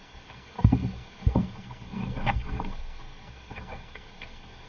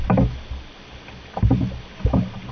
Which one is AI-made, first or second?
first